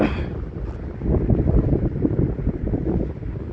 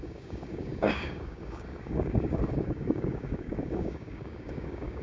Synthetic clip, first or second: second